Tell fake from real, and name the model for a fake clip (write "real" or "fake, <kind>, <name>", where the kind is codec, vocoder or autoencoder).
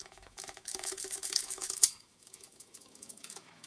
fake, autoencoder, DAC-VAE